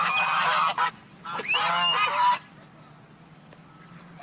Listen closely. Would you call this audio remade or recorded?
recorded